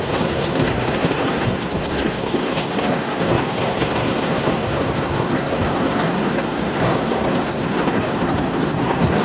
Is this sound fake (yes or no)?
yes